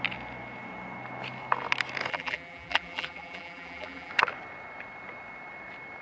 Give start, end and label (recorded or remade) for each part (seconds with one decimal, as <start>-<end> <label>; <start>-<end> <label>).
0.0-2.1 recorded; 2.1-4.1 remade; 4.1-6.0 recorded